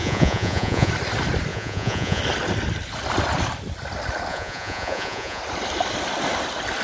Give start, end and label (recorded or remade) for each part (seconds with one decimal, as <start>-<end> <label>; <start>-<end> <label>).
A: 0.0-0.9 remade; 0.9-1.5 recorded; 1.5-2.2 remade; 2.2-4.3 recorded; 4.3-5.4 remade; 5.4-6.8 recorded

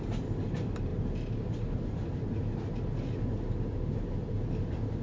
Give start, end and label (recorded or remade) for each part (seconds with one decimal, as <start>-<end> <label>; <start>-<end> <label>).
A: 0.0-5.0 recorded

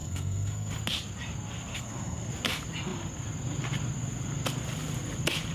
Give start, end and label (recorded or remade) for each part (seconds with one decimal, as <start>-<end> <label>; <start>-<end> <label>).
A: 0.0-0.7 remade; 0.7-1.7 recorded; 1.7-2.3 remade; 2.3-5.5 recorded